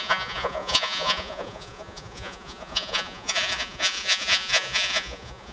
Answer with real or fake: fake